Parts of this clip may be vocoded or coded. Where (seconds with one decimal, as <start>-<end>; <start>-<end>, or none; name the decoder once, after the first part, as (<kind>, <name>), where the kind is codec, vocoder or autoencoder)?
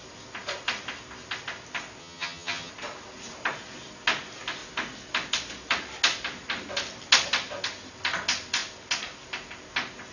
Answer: 2.0-2.7 (vocoder, HiFi-GAN)